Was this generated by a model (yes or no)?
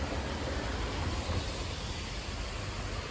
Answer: no